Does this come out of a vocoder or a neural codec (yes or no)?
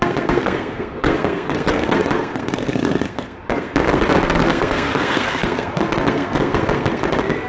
yes